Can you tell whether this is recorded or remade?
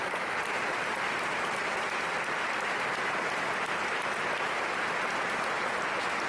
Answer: recorded